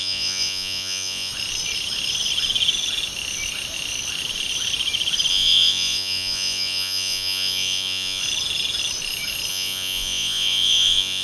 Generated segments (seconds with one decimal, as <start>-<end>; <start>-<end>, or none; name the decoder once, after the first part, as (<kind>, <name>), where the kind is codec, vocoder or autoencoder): 0.0-1.3 (vocoder, Vocos); 5.3-8.2; 9.5-11.2